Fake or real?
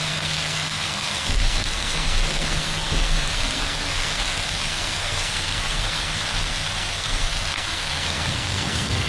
fake